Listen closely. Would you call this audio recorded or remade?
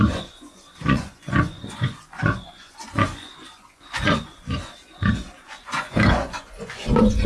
remade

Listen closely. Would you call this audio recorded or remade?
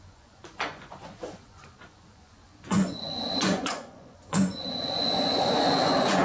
remade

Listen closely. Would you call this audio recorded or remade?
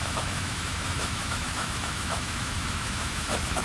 remade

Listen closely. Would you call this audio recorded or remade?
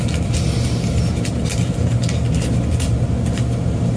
recorded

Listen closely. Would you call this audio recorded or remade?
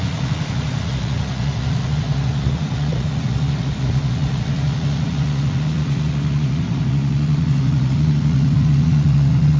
remade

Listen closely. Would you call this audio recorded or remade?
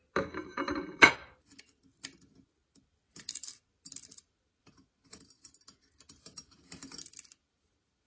recorded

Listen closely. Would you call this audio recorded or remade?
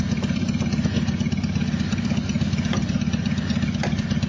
recorded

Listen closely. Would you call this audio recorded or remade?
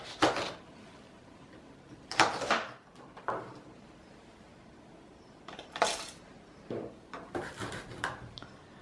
recorded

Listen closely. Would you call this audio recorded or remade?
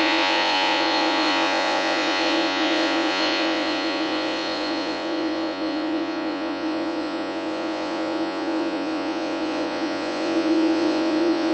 remade